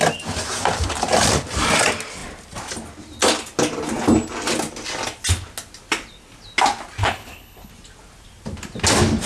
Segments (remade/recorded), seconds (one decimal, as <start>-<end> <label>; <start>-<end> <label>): 0.0-7.0 recorded; 7.0-7.7 remade; 7.7-9.3 recorded